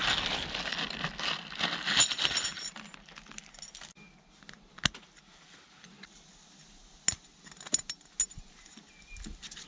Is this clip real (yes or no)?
yes